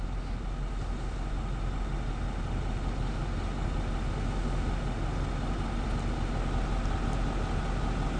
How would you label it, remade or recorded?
recorded